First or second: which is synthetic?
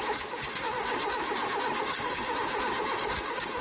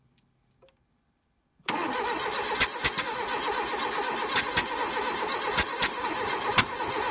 first